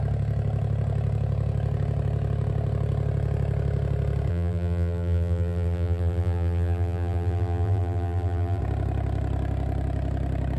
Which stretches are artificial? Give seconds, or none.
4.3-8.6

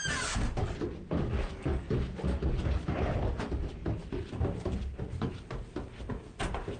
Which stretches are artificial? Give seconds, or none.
none